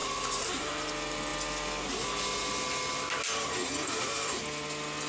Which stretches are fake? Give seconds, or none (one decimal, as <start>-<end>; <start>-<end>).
0.0-0.9